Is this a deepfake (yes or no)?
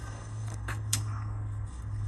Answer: yes